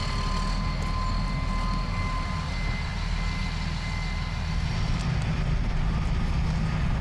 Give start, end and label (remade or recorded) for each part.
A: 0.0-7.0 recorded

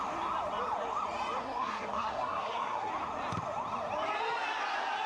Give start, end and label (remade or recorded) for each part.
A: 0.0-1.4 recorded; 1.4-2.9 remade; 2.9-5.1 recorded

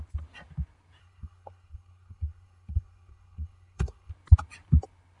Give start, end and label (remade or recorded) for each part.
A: 0.0-1.0 recorded; 1.0-4.1 remade; 4.1-5.2 recorded